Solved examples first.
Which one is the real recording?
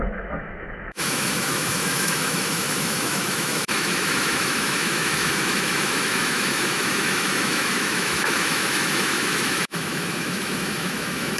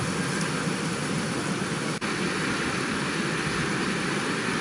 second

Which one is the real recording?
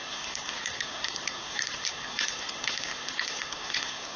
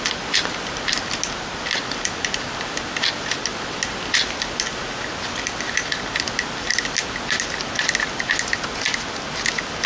second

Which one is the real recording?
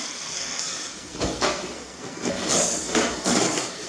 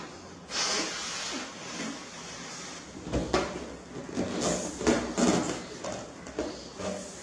second